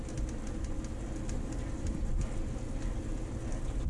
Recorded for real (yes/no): yes